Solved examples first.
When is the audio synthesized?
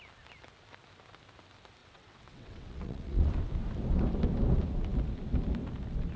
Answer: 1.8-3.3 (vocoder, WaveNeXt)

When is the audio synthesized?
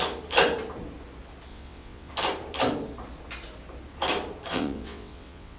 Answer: 1.5-2.1 (vocoder, WaveNeXt); 4.5-5.6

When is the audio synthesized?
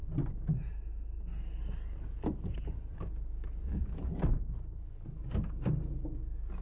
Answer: none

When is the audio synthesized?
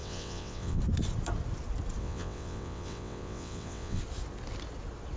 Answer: 0.0-0.8 (vocoder, WaveNeXt); 2.0-4.0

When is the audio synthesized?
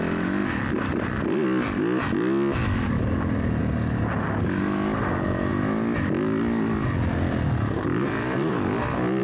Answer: none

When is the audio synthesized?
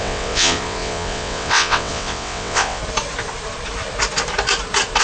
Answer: 0.0-2.8 (vocoder, WaveNeXt)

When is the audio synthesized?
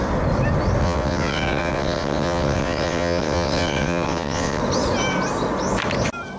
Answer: 0.8-4.6 (vocoder, WaveNeXt)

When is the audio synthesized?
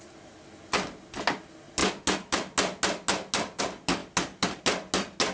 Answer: none